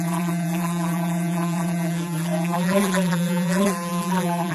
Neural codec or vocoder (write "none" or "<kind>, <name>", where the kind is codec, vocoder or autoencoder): vocoder, BigVGAN v2